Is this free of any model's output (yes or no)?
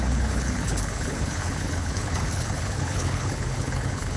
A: no